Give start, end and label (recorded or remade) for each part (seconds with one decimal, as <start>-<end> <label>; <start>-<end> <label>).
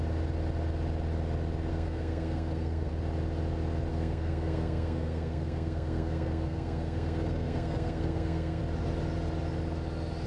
0.0-1.7 recorded; 1.7-2.9 remade; 2.9-3.9 recorded; 3.9-8.6 remade; 8.6-10.3 recorded